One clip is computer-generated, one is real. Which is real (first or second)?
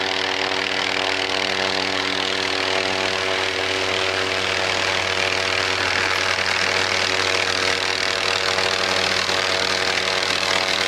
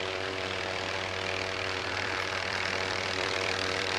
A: first